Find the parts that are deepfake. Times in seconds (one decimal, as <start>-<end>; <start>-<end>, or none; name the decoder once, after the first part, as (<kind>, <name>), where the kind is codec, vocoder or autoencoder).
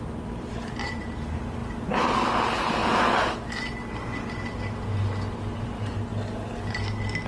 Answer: none